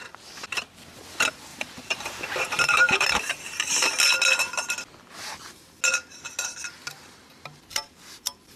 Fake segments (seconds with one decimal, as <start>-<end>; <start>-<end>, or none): 1.5-3.2; 7.2-8.6